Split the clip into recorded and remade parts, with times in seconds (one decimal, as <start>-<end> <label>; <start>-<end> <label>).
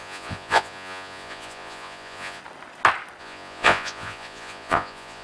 0.0-2.4 remade; 2.4-3.2 recorded; 3.2-5.2 remade